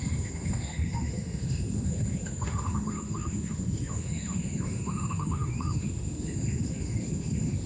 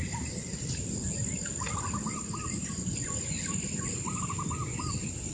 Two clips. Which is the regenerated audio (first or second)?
first